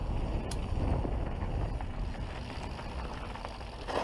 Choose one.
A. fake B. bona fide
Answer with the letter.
B